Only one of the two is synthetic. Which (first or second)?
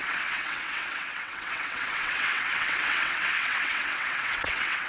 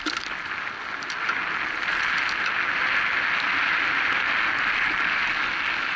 first